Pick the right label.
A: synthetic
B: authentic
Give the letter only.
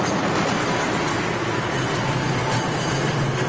B